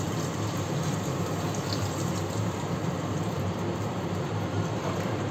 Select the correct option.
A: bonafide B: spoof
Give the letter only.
B